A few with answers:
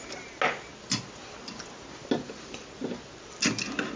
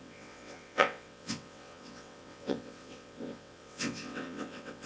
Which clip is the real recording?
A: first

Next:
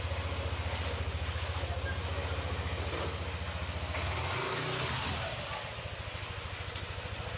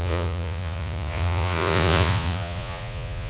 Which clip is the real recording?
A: first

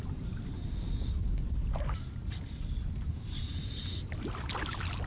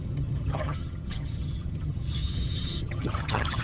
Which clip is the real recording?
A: first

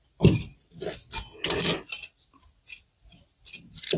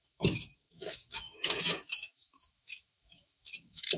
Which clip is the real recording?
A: first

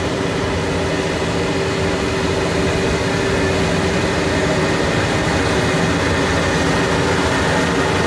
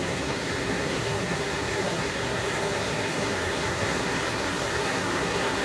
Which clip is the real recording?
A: first